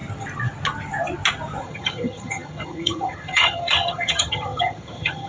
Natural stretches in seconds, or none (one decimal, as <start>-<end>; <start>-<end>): 0.0-1.6